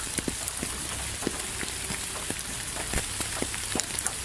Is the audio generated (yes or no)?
no